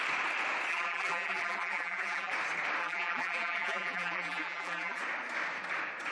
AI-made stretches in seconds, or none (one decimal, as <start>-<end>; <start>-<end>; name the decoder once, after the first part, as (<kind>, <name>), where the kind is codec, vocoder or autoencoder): 0.7-2.3 (vocoder, BigVGAN v2); 2.8-5.0